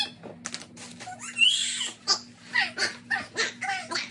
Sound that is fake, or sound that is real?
real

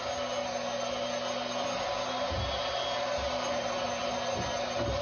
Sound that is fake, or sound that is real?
real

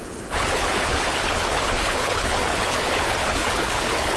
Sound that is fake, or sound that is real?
fake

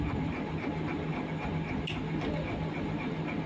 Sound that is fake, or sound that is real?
real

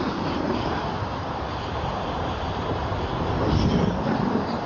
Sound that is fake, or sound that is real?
fake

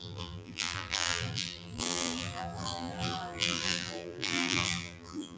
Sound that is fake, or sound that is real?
fake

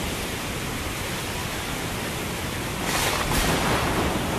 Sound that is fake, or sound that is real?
real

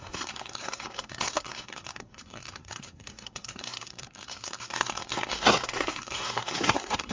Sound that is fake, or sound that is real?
fake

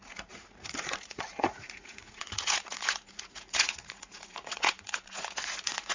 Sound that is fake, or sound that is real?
fake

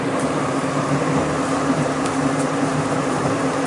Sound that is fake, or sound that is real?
fake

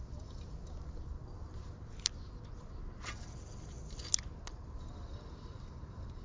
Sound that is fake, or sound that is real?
real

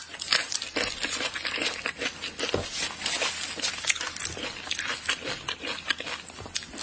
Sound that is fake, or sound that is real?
real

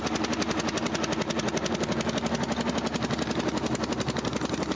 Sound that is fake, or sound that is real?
real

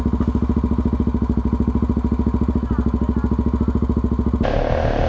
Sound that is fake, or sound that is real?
real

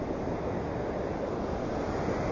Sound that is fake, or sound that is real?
real